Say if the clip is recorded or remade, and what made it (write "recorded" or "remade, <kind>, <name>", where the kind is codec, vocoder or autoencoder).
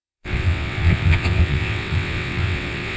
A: remade, vocoder, WaveNeXt